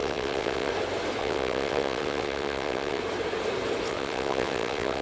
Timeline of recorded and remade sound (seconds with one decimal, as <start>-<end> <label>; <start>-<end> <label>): 0.0-0.7 remade; 0.7-1.2 recorded; 1.2-3.0 remade; 3.0-3.9 recorded; 3.9-5.0 remade